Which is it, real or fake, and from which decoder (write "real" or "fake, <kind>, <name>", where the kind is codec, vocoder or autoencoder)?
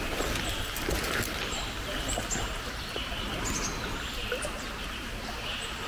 real